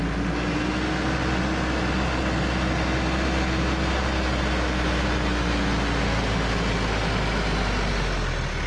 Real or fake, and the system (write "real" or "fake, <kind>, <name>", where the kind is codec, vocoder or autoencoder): real